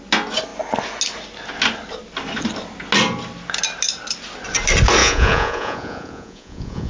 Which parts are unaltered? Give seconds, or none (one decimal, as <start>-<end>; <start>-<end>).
0.0-5.0